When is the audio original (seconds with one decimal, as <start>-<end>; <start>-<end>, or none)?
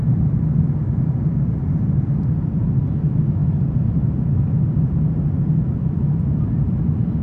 0.0-7.2